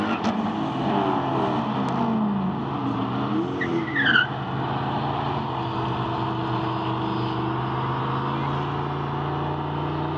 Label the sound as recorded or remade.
recorded